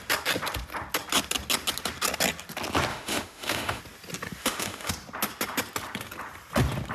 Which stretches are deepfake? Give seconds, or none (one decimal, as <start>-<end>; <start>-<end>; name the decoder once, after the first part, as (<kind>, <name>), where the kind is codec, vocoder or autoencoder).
2.9-3.8 (autoencoder, DAC-VAE); 4.4-4.9